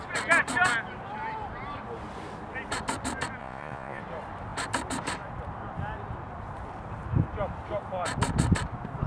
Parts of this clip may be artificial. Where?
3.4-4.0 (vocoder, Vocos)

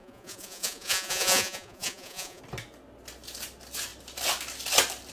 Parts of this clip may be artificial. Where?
0.0-2.4 (vocoder, Vocos)

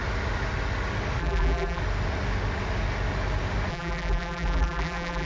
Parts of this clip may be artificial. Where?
1.2-1.8 (vocoder, BigVGAN v2); 3.7-5.2

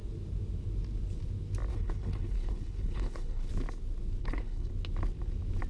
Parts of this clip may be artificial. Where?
1.7-3.5 (codec, HILCodec); 4.2-4.7

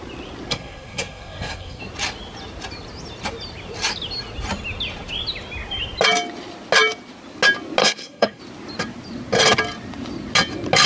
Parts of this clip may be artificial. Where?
0.5-1.8 (codec, SNAC); 7.8-8.4

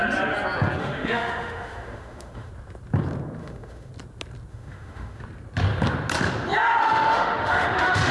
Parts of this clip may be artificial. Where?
0.8-2.5 (autoencoder, DAC-VAE); 3.4-3.9; 4.5-5.2; 6.8-8.1

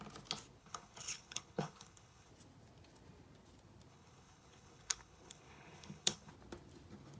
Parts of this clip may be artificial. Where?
0.6-2.3 (codec, HILCodec); 3.9-6.3